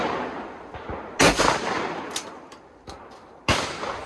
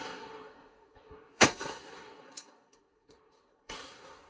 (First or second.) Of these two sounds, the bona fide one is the first